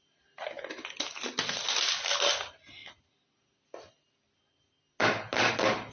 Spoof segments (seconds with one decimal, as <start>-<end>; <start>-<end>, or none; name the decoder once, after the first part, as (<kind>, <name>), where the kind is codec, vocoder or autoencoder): none